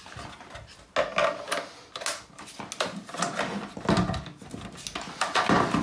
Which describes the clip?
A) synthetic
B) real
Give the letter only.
B